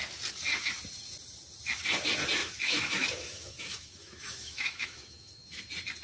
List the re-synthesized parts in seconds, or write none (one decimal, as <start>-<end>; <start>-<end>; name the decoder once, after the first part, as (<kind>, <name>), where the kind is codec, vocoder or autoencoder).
2.4-5.6 (autoencoder, DAC-VAE)